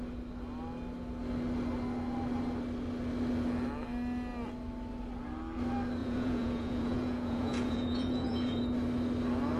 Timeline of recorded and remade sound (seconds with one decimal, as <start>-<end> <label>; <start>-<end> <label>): 0.0-6.0 recorded; 6.0-8.6 remade; 8.6-9.6 recorded

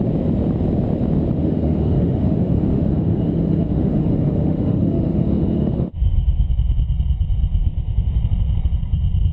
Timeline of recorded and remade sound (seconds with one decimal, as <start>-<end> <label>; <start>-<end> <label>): 0.0-1.4 recorded; 1.4-6.5 remade; 6.5-7.6 recorded; 7.6-8.2 remade; 8.2-9.3 recorded

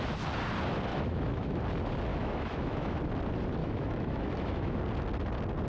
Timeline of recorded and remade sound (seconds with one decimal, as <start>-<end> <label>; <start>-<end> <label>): 0.0-0.9 recorded; 0.9-1.6 remade; 1.6-2.1 recorded; 2.1-3.0 remade; 3.0-3.6 recorded; 3.6-4.8 remade; 4.8-5.7 recorded

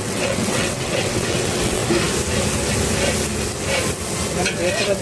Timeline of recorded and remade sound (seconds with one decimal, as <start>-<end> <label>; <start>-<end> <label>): 0.0-1.8 remade; 1.8-5.0 recorded

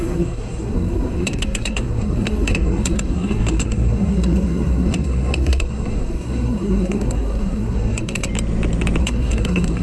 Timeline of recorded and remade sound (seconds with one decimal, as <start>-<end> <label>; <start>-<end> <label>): 0.0-8.3 remade; 8.3-9.0 recorded; 9.0-9.8 remade

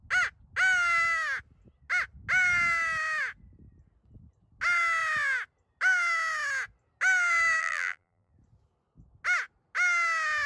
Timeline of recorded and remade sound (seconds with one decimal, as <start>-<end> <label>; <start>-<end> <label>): 0.0-7.6 recorded; 7.6-8.3 remade; 8.3-10.5 recorded

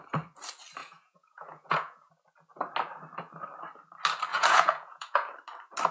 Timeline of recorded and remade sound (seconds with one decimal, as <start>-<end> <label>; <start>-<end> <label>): 0.0-0.8 recorded; 0.8-2.1 remade; 2.1-4.3 recorded; 4.3-5.3 remade; 5.3-5.9 recorded

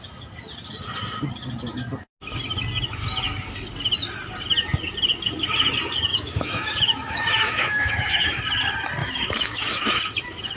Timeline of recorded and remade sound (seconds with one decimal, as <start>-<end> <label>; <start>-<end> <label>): 0.0-6.1 recorded; 6.1-8.4 remade; 8.4-9.0 recorded; 9.0-10.0 remade; 10.0-10.6 recorded